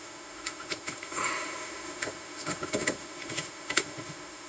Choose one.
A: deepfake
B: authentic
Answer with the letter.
A